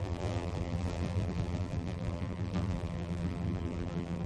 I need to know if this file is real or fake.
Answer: fake